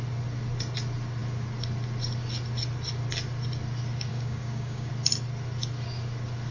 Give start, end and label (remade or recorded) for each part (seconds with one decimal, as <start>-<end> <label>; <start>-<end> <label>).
0.0-4.1 recorded; 4.1-4.9 remade; 4.9-6.5 recorded